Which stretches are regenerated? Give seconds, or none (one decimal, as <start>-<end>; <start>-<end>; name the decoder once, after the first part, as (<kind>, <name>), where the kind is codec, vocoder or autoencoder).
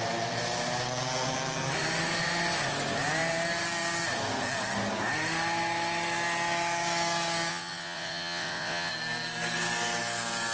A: 7.5-8.9 (vocoder, WaveNeXt)